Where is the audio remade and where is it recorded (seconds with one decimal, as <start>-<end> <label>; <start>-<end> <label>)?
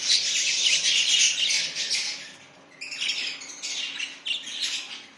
0.0-5.2 recorded